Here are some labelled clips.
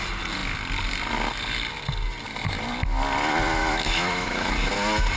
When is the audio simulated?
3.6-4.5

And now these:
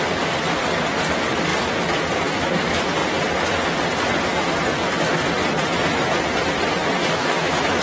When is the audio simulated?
7.0-7.8

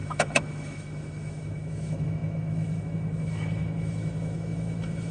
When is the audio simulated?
0.0-5.1

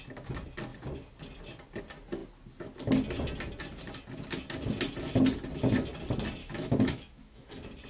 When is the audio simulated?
6.4-7.5

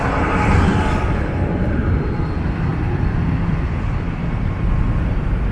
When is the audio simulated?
none

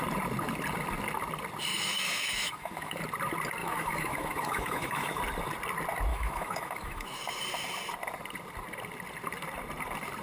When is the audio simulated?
1.7-3.0; 3.6-5.2; 6.1-7.2

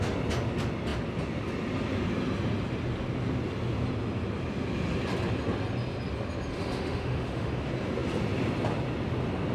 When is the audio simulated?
6.5-7.5

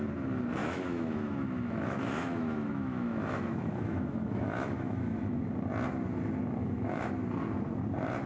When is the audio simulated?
0.6-5.4; 6.6-7.1